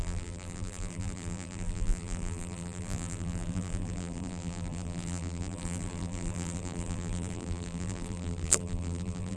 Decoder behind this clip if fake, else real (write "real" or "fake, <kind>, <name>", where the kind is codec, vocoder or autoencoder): fake, vocoder, BigVGAN v2